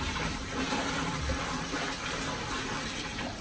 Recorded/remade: remade